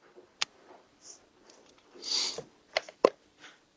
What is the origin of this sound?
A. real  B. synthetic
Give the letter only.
B